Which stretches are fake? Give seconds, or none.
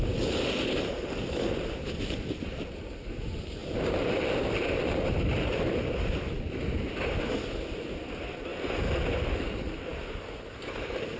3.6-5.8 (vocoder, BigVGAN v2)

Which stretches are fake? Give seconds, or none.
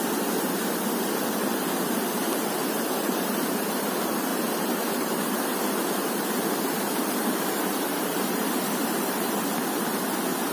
2.6-3.9 (vocoder, BigVGAN v2); 4.3-9.3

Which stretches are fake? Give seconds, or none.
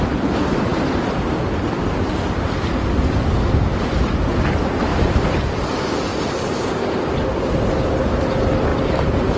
0.7-1.3 (vocoder, BigVGAN v2); 4.9-5.4; 6.1-6.7; 8.7-9.4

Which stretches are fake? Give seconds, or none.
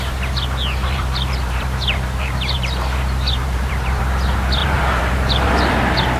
0.8-4.0 (vocoder, BigVGAN v2); 4.6-5.7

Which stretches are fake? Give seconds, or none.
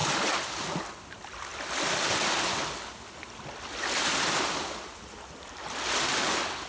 1.5-5.5 (vocoder, BigVGAN v2)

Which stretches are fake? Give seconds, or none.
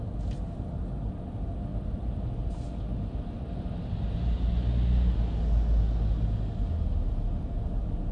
none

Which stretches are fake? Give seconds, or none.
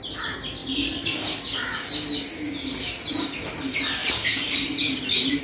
none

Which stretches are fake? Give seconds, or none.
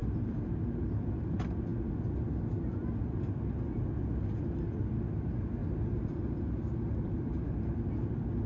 5.6-6.4 (vocoder, BigVGAN v2)